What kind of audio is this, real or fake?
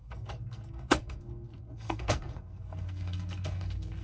fake